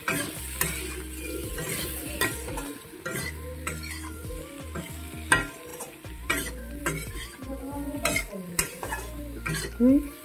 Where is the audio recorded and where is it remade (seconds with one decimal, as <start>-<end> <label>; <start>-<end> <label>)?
0.0-1.4 recorded; 1.4-2.2 remade; 2.2-5.7 recorded; 5.7-6.8 remade; 6.8-10.2 recorded